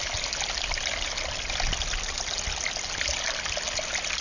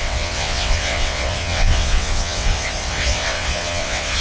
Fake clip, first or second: second